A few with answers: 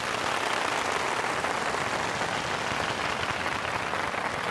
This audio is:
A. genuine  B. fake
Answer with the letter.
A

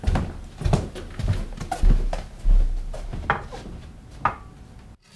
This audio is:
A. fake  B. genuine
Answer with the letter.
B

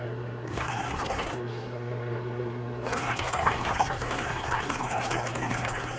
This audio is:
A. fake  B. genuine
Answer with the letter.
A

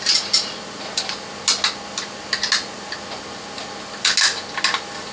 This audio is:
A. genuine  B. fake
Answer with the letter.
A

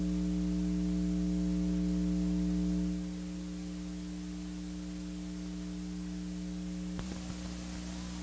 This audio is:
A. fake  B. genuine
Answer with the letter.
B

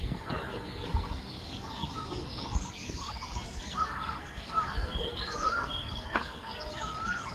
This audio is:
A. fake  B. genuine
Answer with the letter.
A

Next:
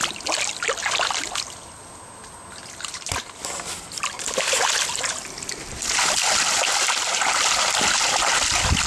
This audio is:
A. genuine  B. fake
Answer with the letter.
A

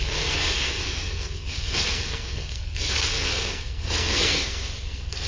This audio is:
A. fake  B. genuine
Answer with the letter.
A